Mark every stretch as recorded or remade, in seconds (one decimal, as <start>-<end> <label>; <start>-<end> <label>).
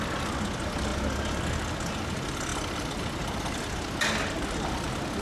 0.0-5.2 recorded